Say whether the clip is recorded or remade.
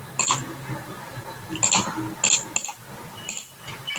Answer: recorded